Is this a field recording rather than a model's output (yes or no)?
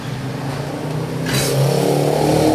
yes